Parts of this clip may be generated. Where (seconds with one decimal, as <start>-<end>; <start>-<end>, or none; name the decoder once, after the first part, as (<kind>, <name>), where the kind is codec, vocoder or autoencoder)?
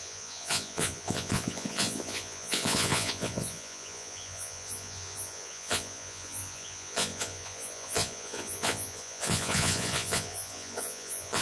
0.0-11.4 (vocoder, Vocos)